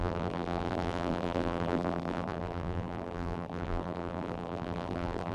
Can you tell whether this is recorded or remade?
remade